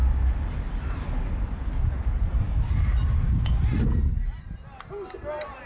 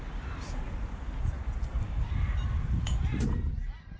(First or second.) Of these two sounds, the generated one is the second